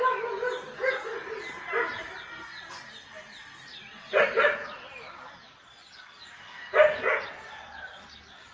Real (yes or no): yes